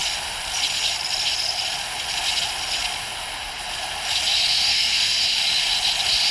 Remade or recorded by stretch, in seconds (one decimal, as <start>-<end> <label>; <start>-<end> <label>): 0.0-4.7 recorded; 4.7-5.2 remade; 5.2-6.3 recorded